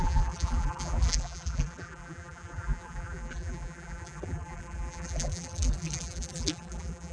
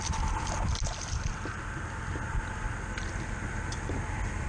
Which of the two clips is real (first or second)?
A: second